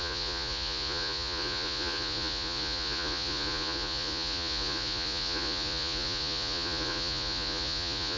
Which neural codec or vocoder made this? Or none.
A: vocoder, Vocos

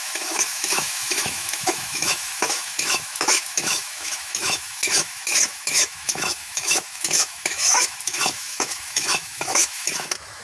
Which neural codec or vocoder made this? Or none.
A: autoencoder, DAC-VAE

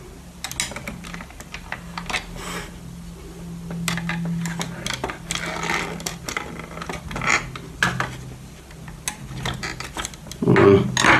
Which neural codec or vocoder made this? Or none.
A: none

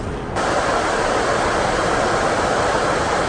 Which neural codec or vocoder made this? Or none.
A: none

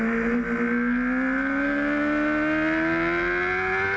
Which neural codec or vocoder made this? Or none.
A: none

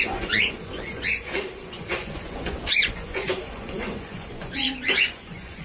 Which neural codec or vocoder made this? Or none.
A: vocoder, Vocos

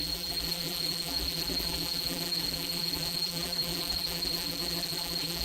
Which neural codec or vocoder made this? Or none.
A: vocoder, BigVGAN v2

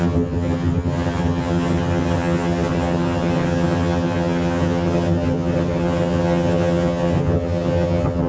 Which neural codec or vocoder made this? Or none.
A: vocoder, HiFi-GAN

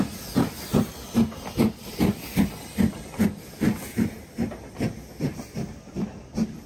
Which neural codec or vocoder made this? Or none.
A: none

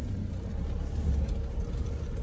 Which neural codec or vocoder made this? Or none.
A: none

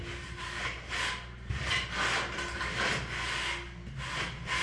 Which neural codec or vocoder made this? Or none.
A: none